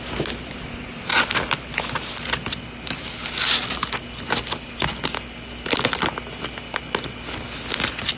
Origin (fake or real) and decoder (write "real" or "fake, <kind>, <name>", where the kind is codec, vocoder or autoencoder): real